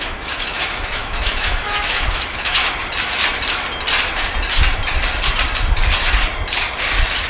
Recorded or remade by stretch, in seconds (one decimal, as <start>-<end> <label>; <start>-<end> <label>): 0.0-2.6 remade; 2.6-7.3 recorded